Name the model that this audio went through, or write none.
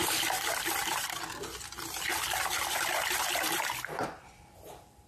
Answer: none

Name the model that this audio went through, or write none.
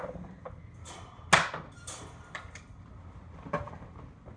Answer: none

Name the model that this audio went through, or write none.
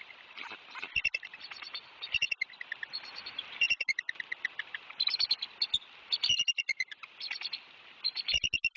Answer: none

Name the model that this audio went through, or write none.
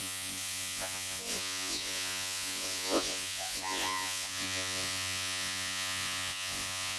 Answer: vocoder, Vocos